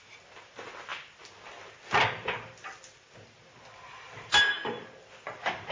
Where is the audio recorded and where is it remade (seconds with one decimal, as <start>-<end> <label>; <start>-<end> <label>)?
0.0-5.7 recorded